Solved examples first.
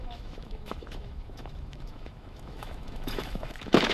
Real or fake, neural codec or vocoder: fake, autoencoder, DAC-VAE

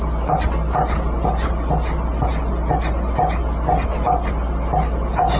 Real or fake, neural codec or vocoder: real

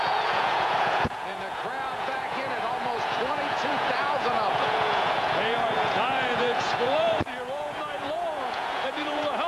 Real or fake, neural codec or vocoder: fake, vocoder, Vocos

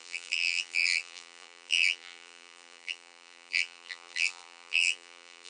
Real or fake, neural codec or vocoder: fake, vocoder, BigVGAN v2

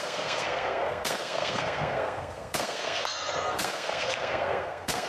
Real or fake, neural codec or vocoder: fake, codec, SNAC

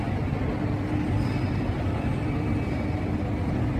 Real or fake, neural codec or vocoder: real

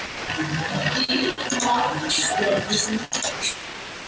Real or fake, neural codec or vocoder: real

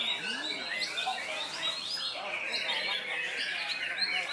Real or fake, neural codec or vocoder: real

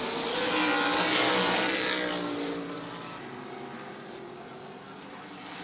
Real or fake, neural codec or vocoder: real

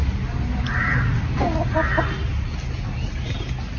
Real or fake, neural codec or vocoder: real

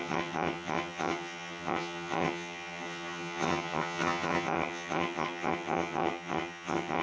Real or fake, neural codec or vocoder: fake, vocoder, HiFi-GAN